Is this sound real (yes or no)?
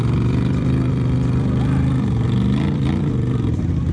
no